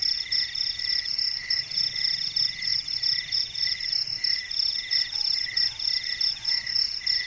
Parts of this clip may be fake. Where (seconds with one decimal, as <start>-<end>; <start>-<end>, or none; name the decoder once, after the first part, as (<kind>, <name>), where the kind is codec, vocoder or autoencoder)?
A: none